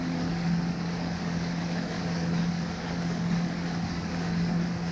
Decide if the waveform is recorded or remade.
remade